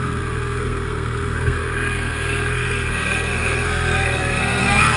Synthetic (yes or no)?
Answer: yes